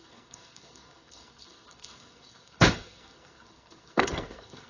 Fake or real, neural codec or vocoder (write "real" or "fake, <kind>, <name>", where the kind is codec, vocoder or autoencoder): fake, codec, SNAC